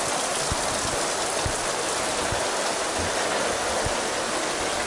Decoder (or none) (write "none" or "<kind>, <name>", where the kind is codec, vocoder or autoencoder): none